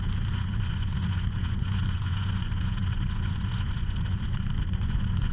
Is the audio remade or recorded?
remade